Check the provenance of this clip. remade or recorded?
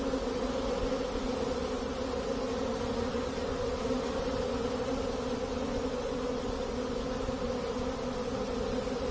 recorded